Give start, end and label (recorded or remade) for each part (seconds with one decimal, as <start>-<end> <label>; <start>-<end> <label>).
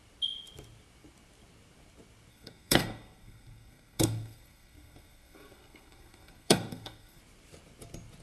0.0-2.3 recorded; 2.3-7.2 remade; 7.2-8.2 recorded